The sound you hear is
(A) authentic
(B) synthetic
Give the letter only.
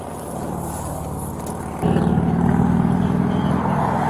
A